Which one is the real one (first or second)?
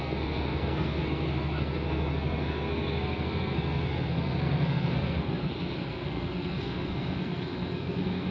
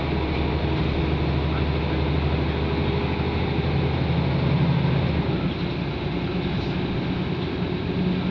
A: second